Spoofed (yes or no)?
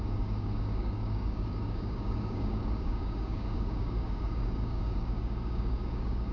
yes